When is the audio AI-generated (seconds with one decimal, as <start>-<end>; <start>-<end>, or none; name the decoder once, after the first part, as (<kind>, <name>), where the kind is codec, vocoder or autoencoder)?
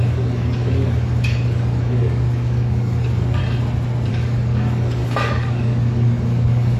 0.0-3.4 (codec, DAC); 4.1-6.8